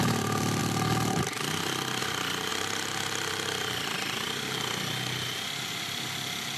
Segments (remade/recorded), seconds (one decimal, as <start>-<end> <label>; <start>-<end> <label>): 0.0-0.6 remade; 0.6-2.0 recorded; 2.0-6.6 remade